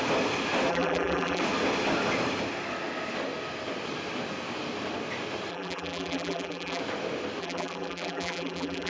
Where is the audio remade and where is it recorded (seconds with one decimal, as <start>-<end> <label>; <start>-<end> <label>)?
0.0-0.7 recorded; 0.7-1.4 remade; 1.4-5.5 recorded; 5.5-6.8 remade; 6.8-7.4 recorded; 7.4-8.9 remade